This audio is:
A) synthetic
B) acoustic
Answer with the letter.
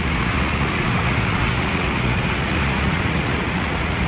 A